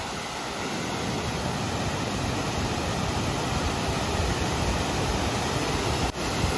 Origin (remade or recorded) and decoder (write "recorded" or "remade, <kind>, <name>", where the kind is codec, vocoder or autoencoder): recorded